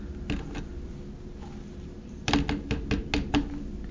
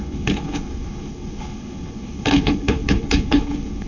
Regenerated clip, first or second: second